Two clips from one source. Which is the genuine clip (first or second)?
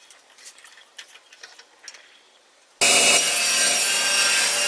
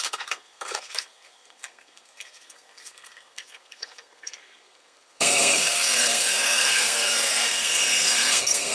first